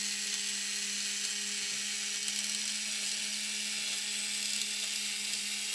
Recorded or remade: recorded